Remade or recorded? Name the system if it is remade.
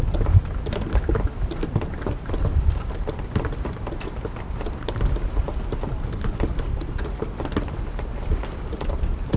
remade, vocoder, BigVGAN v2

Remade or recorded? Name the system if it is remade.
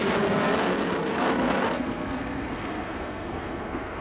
remade, codec, SNAC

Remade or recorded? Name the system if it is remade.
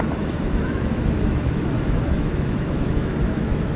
remade, autoencoder, DAC-VAE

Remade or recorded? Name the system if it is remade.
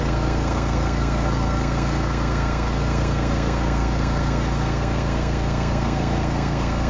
remade, codec, SNAC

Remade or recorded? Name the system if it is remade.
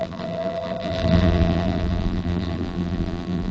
remade, vocoder, BigVGAN v2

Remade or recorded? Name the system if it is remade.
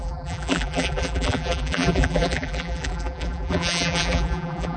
remade, vocoder, BigVGAN v2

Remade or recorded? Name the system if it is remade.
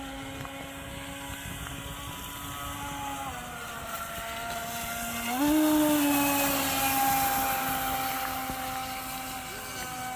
recorded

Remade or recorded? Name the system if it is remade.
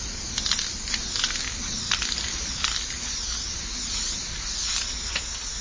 recorded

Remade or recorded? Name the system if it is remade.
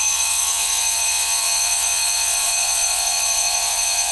remade, vocoder, Vocos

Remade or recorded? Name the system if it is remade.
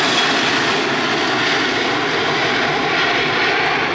recorded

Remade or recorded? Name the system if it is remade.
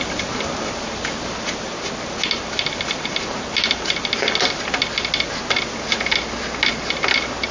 recorded